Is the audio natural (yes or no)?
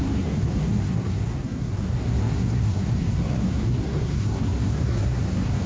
no